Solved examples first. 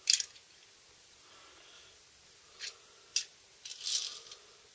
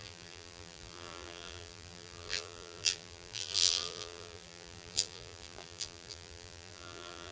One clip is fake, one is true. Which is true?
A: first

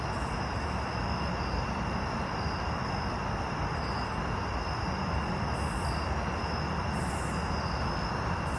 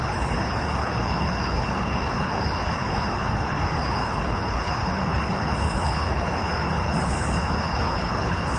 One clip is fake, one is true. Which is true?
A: first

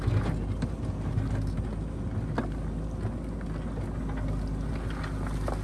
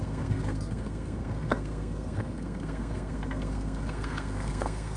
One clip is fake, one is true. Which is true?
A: first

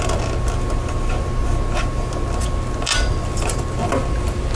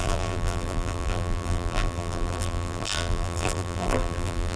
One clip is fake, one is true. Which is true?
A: first